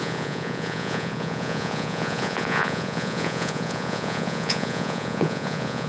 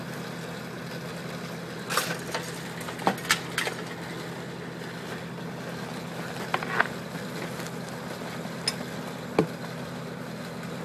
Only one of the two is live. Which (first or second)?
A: second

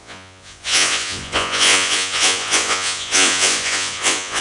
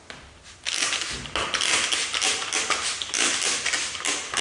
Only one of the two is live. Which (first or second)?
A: second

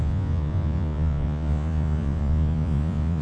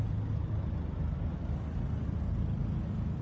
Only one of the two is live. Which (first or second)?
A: second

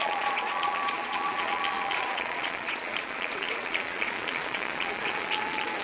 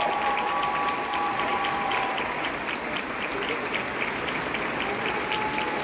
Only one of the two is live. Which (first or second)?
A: second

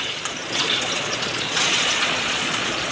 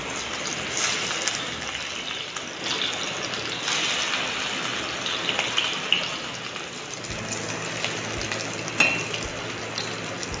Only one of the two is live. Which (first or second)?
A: second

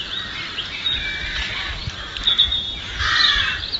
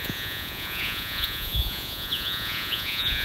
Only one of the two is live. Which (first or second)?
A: first